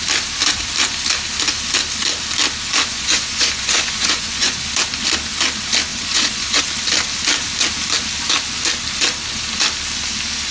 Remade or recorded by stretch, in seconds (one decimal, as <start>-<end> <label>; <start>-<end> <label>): 0.0-2.9 recorded; 2.9-4.6 remade; 4.6-5.9 recorded; 5.9-6.6 remade; 6.6-10.5 recorded